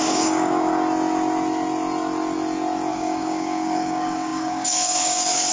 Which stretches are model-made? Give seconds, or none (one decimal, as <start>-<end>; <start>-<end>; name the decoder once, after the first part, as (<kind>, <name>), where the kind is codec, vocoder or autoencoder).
0.0-0.7 (codec, DAC); 2.9-5.5